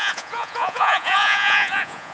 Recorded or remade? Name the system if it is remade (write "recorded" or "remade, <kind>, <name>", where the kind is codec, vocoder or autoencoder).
remade, vocoder, Vocos